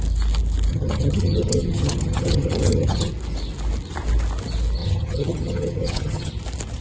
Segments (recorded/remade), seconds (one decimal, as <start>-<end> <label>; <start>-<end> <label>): 0.0-0.7 recorded; 0.7-3.1 remade; 3.1-4.8 recorded; 4.8-6.3 remade; 6.3-6.8 recorded